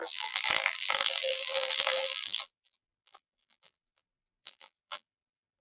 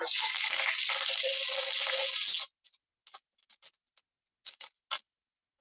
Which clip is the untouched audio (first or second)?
second